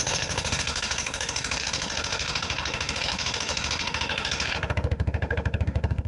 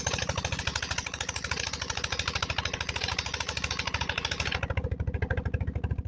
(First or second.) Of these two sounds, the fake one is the first